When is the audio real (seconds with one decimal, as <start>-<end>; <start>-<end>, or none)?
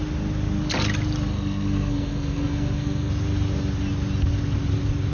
0.0-1.3; 3.1-5.1